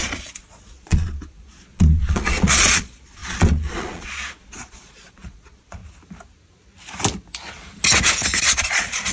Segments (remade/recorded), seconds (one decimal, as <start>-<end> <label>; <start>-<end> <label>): 0.0-5.8 remade; 5.8-8.4 recorded; 8.4-9.1 remade